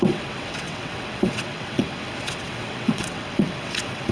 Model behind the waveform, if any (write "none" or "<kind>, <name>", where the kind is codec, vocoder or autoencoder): vocoder, WaveNeXt